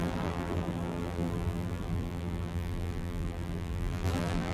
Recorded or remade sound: remade